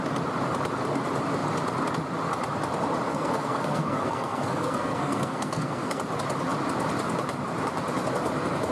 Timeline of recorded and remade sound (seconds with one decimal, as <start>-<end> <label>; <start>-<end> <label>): 0.0-3.1 recorded; 3.1-6.0 remade; 6.0-8.7 recorded